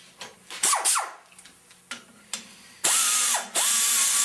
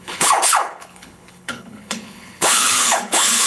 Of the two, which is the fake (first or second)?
second